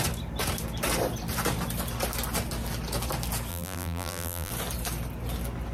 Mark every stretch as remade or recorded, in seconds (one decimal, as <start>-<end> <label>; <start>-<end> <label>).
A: 0.0-3.5 recorded; 3.5-4.5 remade; 4.5-5.7 recorded